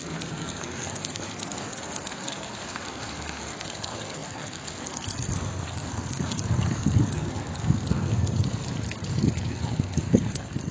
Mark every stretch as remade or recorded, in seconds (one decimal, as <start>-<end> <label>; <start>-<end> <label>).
0.0-8.6 remade; 8.6-9.1 recorded; 9.1-10.7 remade

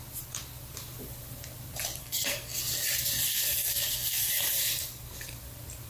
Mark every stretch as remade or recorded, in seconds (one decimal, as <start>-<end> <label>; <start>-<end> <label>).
0.0-2.0 recorded; 2.0-2.6 remade; 2.6-3.3 recorded; 3.3-4.3 remade; 4.3-5.9 recorded

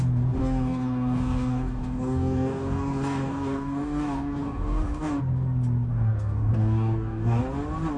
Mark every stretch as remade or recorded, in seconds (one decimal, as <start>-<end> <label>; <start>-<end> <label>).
0.0-0.4 recorded; 0.4-5.2 remade; 5.2-5.9 recorded; 5.9-7.4 remade; 7.4-8.0 recorded